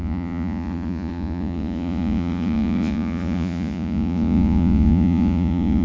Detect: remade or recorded remade